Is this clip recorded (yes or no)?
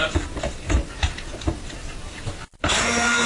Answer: yes